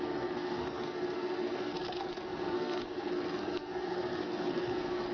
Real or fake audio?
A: fake